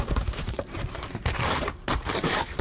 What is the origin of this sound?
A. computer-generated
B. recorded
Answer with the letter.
A